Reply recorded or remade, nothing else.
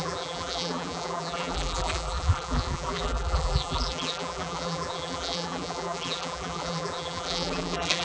remade